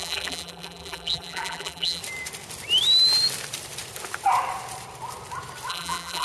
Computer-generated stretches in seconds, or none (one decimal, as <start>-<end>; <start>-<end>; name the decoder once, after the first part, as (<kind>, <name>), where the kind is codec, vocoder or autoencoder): 0.0-2.0 (vocoder, BigVGAN v2); 5.7-6.2

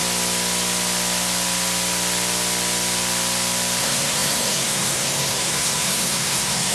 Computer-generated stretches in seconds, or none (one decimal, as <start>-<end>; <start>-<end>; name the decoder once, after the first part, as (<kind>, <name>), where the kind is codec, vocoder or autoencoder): 3.8-6.7 (codec, SNAC)